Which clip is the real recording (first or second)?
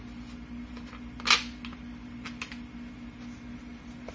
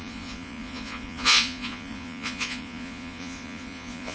first